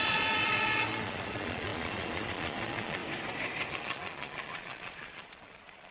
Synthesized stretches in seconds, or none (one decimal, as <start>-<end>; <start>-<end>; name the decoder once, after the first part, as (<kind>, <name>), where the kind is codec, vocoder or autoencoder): 0.0-3.0 (vocoder, Vocos); 3.7-5.9